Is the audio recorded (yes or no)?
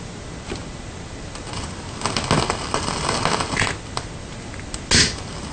yes